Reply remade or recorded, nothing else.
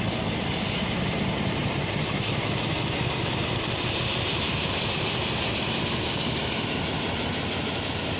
remade